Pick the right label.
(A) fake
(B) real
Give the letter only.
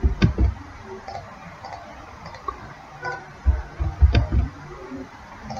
B